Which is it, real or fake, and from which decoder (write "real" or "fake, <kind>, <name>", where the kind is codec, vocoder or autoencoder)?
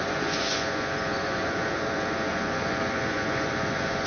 fake, vocoder, Vocos